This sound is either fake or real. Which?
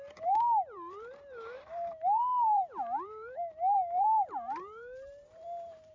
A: fake